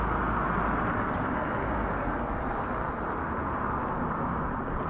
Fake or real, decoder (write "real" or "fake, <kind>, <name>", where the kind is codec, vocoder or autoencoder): real